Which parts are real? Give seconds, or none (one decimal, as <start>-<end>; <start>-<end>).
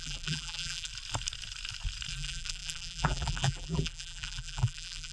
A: 0.9-2.1